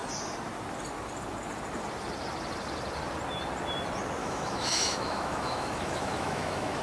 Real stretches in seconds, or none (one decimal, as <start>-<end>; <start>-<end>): 0.0-4.2